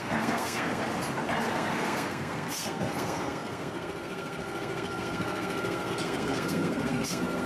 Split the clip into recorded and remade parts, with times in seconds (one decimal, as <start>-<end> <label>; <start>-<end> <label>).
0.0-0.8 remade; 0.8-1.5 recorded; 1.5-7.5 remade